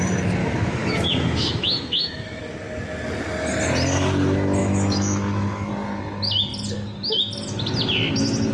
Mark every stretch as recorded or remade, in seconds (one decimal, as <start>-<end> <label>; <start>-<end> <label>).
0.0-0.4 recorded; 0.4-2.4 remade; 2.4-4.6 recorded; 4.6-5.7 remade; 5.7-8.5 recorded